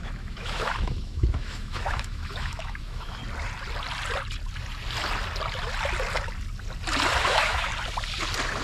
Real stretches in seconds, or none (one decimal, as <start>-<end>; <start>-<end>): 3.2-7.2; 7.7-8.6